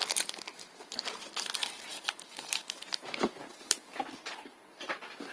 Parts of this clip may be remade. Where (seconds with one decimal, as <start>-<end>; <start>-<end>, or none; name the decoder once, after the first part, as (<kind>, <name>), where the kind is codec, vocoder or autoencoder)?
1.9-4.0 (vocoder, BigVGAN v2)